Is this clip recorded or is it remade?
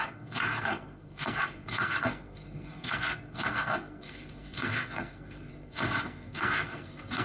remade